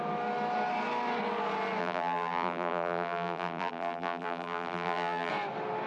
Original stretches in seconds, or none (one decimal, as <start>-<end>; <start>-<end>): 0.0-1.8; 5.3-5.9